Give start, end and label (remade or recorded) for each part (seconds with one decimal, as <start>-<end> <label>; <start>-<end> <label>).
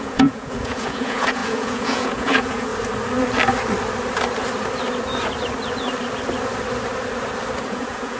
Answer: 0.0-2.7 remade; 2.7-7.6 recorded; 7.6-8.2 remade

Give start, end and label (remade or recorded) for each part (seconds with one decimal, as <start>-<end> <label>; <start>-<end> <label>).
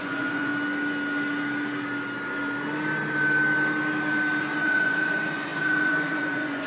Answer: 0.0-0.5 remade; 0.5-4.4 recorded; 4.4-6.7 remade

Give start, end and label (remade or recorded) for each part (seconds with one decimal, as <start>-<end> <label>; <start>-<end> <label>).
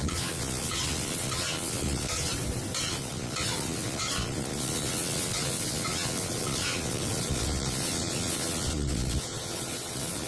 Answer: 0.0-2.3 remade; 2.3-2.8 recorded; 2.8-10.3 remade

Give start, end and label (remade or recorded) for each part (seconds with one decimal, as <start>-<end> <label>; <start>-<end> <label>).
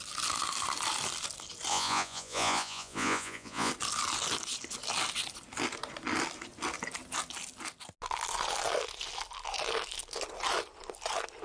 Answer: 0.0-1.7 recorded; 1.7-3.7 remade; 3.7-11.4 recorded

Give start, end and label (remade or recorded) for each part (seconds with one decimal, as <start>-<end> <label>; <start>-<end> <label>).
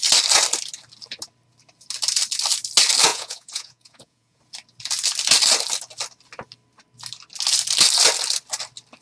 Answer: 0.0-3.1 recorded; 3.1-4.4 remade; 4.4-9.0 recorded